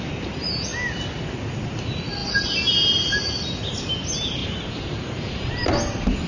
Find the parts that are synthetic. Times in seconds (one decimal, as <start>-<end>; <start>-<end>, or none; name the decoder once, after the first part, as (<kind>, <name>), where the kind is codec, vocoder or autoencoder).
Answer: 2.2-3.3 (vocoder, BigVGAN v2); 4.4-6.3

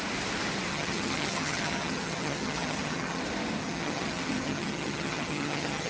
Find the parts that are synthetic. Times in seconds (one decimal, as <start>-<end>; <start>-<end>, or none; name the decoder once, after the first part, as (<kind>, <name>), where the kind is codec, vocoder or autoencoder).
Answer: 0.7-3.2 (vocoder, HiFi-GAN); 3.6-5.9

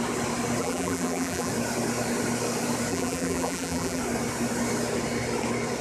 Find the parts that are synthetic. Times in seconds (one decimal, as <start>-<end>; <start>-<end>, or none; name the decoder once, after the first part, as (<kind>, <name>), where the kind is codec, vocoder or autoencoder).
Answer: 0.6-1.5 (vocoder, BigVGAN v2); 2.9-4.0

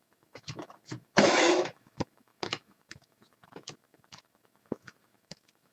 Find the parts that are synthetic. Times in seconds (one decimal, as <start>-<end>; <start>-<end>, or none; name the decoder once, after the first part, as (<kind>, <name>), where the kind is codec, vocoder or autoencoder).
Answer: 0.0-5.7 (autoencoder, DAC-VAE)

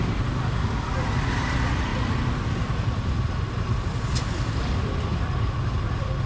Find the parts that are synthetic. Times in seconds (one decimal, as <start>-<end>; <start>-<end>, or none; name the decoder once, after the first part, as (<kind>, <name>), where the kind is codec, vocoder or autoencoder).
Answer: none

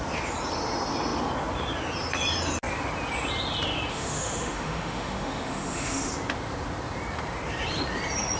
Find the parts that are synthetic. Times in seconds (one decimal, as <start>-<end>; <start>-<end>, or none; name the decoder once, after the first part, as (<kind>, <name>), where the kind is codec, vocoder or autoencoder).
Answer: 3.9-6.1 (autoencoder, DAC-VAE)

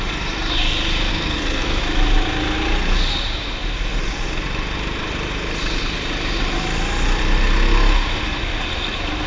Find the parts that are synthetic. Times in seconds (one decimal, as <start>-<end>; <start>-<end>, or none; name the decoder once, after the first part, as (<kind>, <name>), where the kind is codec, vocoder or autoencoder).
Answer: 1.1-1.8 (codec, SNAC)

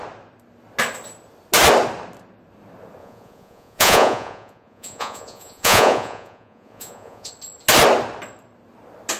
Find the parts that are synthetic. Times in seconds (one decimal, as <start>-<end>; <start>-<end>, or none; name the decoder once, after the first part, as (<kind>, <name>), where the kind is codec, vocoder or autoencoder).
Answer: 3.0-7.3 (vocoder, Vocos)